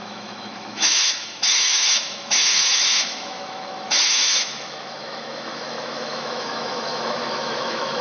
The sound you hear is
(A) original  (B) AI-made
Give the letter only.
B